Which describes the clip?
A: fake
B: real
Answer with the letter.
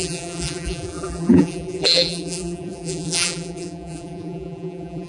A